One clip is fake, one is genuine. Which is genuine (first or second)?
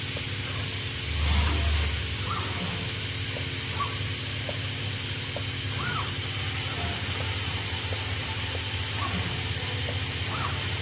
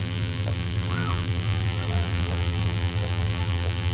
first